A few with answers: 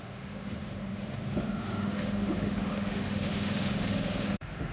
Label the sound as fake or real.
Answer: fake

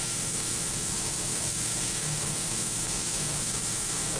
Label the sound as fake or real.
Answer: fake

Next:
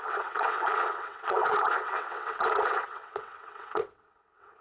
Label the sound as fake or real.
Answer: fake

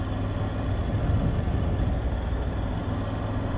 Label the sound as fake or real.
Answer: real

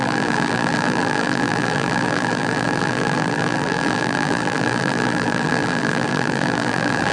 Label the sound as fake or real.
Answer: fake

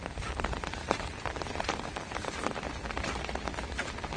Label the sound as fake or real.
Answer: fake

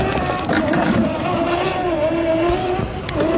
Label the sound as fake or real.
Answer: real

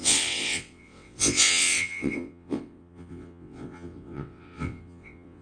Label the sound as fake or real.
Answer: fake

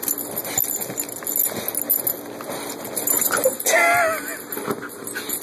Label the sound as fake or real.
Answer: real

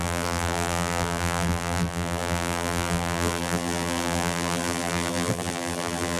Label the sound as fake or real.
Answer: fake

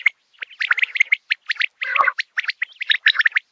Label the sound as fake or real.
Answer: real